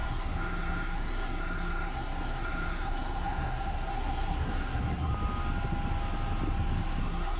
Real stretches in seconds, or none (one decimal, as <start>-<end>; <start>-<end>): 5.1-7.0